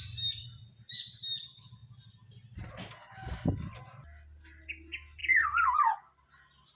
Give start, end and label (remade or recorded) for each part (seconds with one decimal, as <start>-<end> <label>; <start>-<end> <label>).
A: 0.0-6.8 recorded